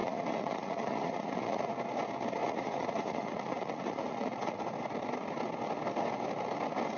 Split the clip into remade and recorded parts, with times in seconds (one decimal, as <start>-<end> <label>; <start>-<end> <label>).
0.0-1.7 remade; 1.7-2.4 recorded; 2.4-4.6 remade; 4.6-7.0 recorded